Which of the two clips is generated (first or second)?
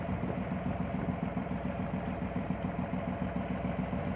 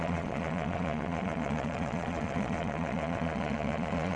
second